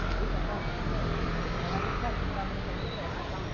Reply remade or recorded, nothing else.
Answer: recorded